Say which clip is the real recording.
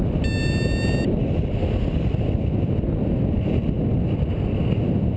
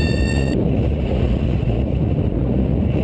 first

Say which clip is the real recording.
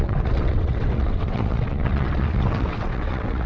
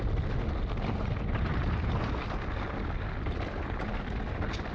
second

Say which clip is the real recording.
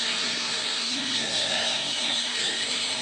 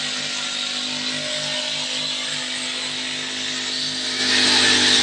second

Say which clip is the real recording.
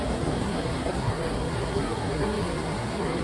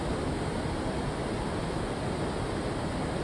second